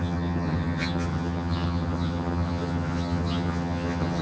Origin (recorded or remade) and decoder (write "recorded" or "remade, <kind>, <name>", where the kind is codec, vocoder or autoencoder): remade, vocoder, HiFi-GAN